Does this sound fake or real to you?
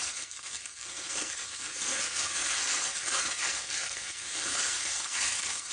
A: fake